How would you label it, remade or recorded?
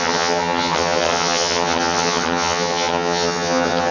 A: remade